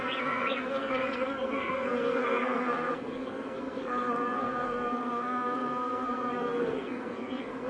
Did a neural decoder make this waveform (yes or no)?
yes